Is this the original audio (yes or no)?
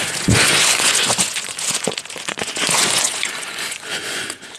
no